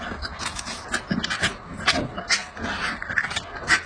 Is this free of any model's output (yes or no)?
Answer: yes